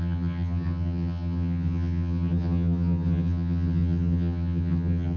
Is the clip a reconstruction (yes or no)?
yes